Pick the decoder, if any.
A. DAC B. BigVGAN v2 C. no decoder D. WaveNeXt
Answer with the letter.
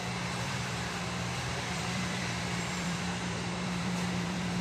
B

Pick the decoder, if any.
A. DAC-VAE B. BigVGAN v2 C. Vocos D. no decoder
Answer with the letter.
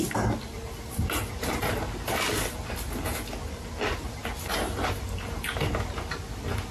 D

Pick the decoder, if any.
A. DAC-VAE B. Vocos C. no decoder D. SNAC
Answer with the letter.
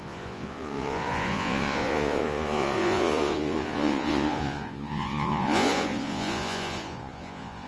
B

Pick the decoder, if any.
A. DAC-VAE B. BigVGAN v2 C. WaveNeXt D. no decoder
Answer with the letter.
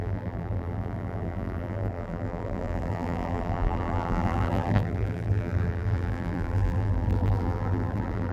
B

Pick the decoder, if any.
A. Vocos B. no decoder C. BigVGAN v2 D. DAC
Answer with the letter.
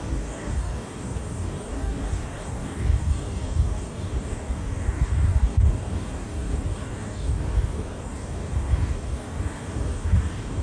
D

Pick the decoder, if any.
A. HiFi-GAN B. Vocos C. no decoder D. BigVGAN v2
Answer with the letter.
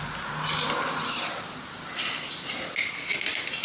C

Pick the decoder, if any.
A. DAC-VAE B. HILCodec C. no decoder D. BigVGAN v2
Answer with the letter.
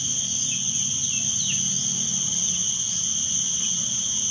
C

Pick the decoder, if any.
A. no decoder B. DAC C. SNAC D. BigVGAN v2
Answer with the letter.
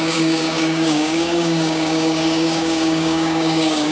B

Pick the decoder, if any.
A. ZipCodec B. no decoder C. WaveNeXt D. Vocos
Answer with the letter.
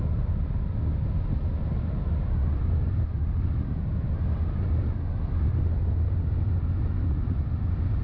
B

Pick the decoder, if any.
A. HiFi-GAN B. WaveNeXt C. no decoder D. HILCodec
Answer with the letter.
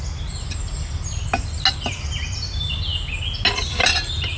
C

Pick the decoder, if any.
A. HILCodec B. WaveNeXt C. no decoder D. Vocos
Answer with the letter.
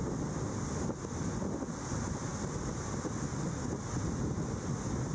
C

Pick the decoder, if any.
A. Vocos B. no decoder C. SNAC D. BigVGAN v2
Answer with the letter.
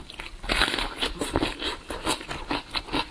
B